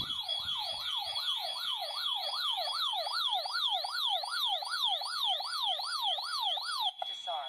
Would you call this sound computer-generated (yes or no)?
yes